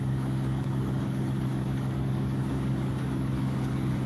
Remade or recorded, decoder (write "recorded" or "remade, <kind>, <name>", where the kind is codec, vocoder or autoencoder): remade, codec, DAC